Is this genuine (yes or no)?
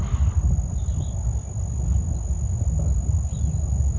yes